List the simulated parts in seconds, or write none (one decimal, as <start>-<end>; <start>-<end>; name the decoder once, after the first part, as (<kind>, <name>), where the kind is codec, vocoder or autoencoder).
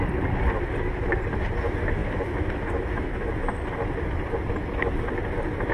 2.0-3.3 (autoencoder, DAC-VAE)